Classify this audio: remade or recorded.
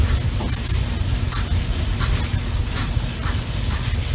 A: recorded